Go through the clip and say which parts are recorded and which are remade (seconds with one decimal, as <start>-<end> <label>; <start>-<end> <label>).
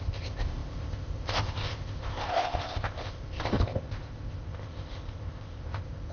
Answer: 0.0-6.1 remade